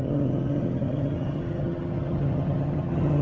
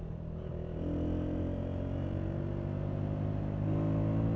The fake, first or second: first